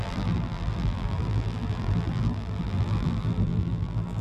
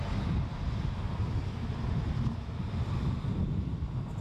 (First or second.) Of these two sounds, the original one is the second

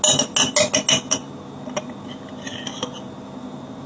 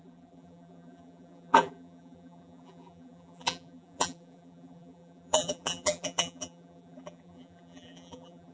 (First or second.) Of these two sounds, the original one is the first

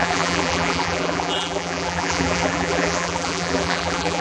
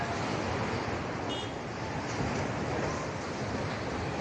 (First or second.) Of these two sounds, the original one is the second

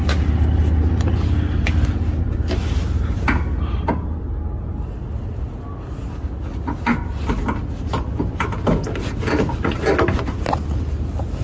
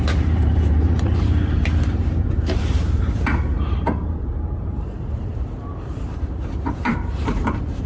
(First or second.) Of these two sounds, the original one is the first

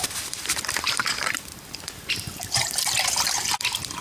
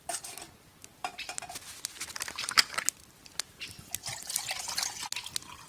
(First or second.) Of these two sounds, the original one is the second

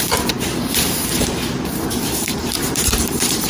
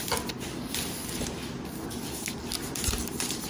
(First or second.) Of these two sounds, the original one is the second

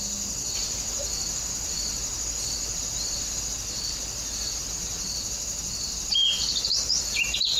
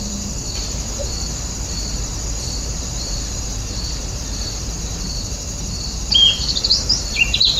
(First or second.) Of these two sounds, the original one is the first